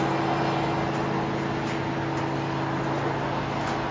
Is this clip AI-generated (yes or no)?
no